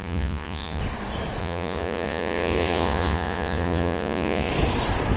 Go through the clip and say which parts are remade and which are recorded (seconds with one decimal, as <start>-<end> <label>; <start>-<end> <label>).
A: 0.0-0.8 remade; 0.8-1.4 recorded; 1.4-4.5 remade; 4.5-5.2 recorded